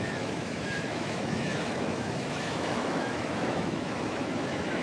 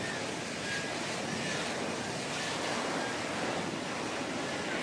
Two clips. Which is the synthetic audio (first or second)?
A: first